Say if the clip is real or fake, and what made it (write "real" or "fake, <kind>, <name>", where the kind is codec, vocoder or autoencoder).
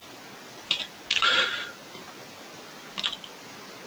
real